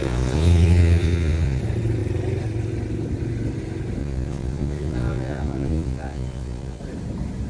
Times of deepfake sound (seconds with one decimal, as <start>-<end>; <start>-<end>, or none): 0.0-1.6; 4.0-6.8

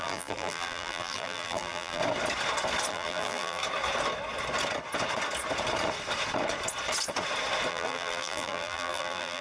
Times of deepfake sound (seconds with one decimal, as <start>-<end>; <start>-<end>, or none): 0.0-2.0; 2.9-3.6; 7.7-9.4

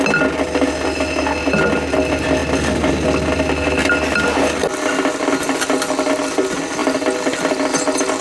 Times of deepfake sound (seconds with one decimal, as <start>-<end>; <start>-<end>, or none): none

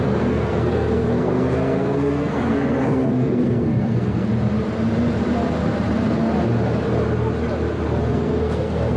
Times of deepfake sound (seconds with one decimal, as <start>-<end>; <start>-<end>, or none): 0.0-4.3; 8.1-9.0